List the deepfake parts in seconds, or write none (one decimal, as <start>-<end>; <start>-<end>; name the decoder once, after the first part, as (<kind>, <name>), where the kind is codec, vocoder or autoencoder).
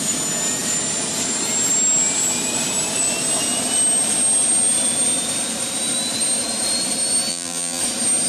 7.3-7.8 (vocoder, BigVGAN v2)